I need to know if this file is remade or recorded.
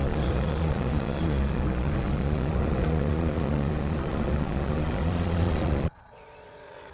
remade